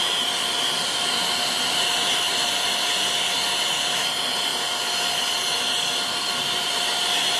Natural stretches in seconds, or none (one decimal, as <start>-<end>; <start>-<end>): 0.0-7.4